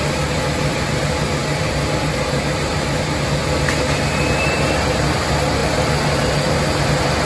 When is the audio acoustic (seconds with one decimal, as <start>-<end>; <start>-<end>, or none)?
3.4-4.4